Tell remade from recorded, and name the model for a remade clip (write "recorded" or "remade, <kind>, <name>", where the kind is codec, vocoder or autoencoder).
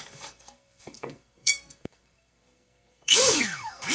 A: remade, codec, SNAC